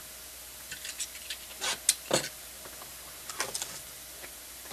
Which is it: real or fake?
real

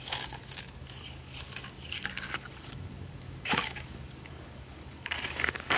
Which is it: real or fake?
fake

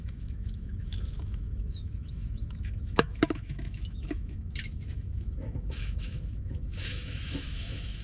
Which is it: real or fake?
fake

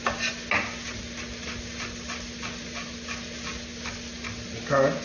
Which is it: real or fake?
real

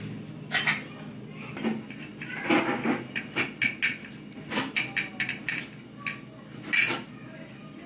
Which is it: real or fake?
real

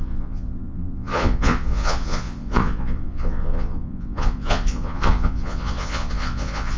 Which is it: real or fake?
fake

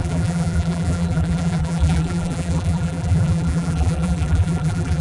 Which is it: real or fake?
fake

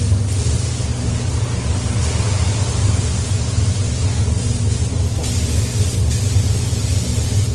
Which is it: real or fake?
real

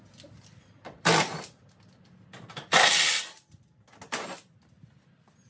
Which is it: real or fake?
real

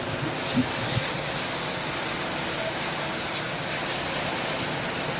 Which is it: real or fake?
real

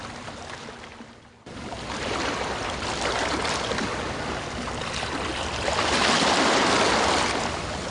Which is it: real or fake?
real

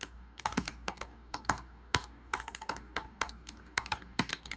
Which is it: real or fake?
fake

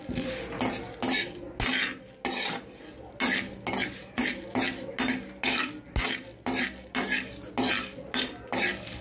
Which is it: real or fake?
real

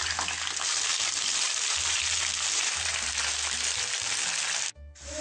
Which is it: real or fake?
real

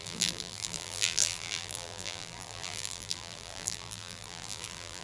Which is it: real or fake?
fake